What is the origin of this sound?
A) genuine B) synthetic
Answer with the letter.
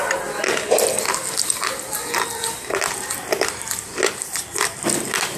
A